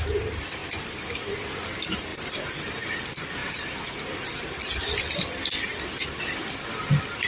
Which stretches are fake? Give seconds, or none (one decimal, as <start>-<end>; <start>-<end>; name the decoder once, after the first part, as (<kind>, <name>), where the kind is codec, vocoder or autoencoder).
2.1-2.7 (vocoder, BigVGAN v2)